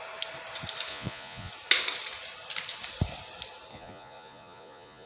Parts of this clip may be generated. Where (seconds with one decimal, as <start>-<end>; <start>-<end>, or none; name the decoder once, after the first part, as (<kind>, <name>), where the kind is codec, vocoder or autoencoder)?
0.9-1.5 (vocoder, Vocos); 3.7-5.1